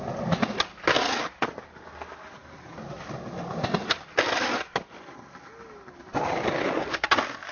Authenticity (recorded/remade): recorded